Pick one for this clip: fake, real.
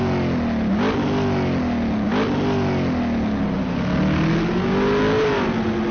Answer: real